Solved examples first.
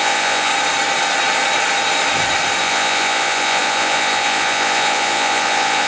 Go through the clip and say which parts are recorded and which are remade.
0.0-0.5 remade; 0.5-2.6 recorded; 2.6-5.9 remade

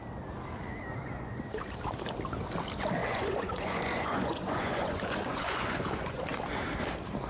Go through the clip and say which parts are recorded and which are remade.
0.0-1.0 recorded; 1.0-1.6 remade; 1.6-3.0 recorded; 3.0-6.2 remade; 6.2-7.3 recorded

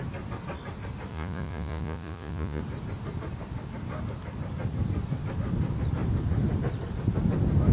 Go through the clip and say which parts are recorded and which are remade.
0.0-1.1 recorded; 1.1-2.6 remade; 2.6-7.7 recorded